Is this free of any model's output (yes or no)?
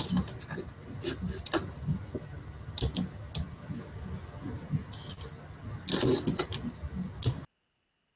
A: yes